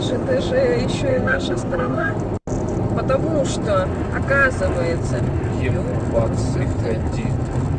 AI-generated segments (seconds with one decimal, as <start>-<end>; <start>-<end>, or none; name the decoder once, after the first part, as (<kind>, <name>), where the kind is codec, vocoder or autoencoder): 1.1-2.1 (codec, SNAC)